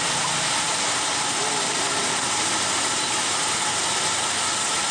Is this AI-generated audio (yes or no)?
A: no